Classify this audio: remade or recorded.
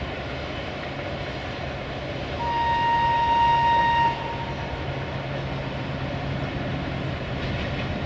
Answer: recorded